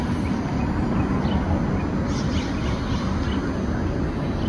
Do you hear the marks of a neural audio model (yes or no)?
no